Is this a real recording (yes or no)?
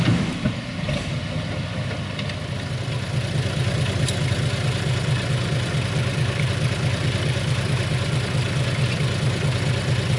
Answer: yes